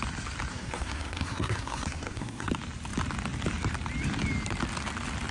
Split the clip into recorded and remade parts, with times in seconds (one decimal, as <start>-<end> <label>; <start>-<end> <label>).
0.0-0.5 recorded; 0.5-2.5 remade; 2.5-5.3 recorded